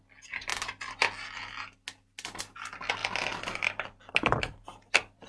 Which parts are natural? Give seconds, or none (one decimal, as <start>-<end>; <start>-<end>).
0.0-5.3